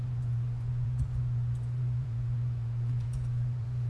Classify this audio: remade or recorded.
remade